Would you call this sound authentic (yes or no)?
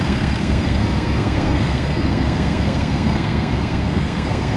no